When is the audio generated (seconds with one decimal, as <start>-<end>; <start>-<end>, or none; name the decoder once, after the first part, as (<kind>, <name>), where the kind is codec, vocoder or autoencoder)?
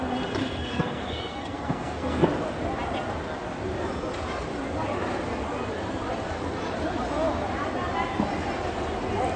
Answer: 0.4-2.3 (codec, SNAC)